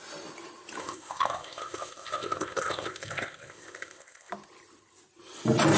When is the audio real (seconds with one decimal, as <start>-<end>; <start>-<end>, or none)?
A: 0.0-0.8; 4.3-5.8